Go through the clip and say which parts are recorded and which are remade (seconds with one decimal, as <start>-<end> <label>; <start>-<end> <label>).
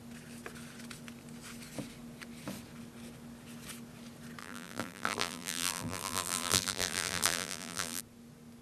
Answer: 0.0-4.4 recorded; 4.4-8.0 remade; 8.0-8.6 recorded